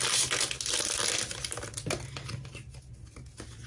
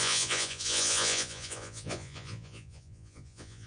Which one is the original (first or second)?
first